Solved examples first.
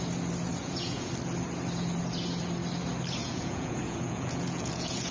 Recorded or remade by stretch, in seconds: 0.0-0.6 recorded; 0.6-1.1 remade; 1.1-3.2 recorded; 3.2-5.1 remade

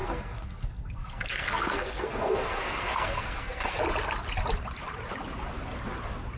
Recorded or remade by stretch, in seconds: 0.0-3.8 remade; 3.8-6.4 recorded

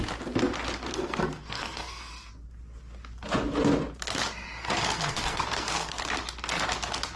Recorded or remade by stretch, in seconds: 0.0-0.9 recorded; 0.9-2.3 remade; 2.3-4.6 recorded; 4.6-6.0 remade; 6.0-7.2 recorded

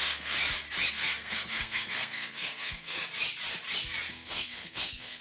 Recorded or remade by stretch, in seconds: 0.0-0.4 remade; 0.4-0.9 recorded; 0.9-3.0 remade; 3.0-4.1 recorded; 4.1-5.2 remade

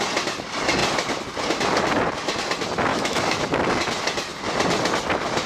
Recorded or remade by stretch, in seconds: 0.0-2.9 recorded; 2.9-3.4 remade; 3.4-5.5 recorded